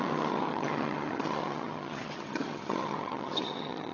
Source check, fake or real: fake